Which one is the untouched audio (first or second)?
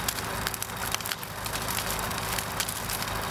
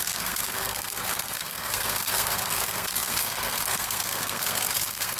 first